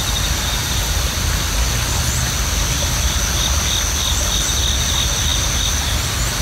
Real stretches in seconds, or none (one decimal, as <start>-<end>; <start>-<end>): 0.0-6.4